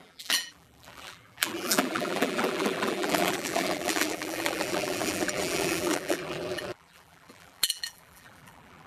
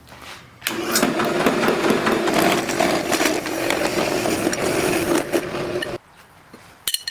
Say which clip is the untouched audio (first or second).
second